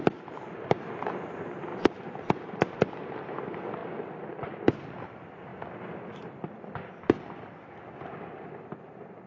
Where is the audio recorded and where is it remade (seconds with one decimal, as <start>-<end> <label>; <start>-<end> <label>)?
0.0-9.3 recorded